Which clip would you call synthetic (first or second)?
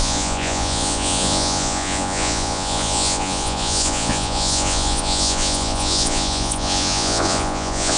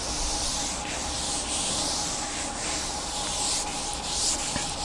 first